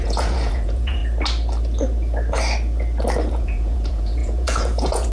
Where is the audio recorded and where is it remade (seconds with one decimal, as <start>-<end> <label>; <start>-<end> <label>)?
0.0-1.0 remade; 1.0-3.3 recorded; 3.3-5.1 remade